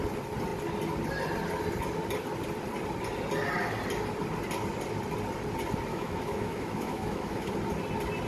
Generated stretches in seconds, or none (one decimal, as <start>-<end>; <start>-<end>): 5.9-7.5